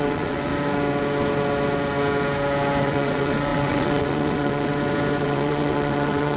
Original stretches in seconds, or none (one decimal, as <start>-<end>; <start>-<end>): 0.5-2.8; 4.7-5.2